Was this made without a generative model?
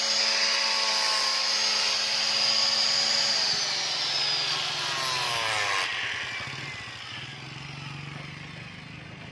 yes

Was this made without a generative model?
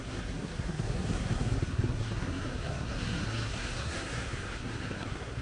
no